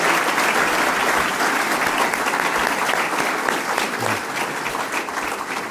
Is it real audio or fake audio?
real